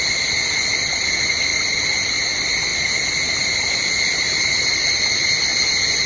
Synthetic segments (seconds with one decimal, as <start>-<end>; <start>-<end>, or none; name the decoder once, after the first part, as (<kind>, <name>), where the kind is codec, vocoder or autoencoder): none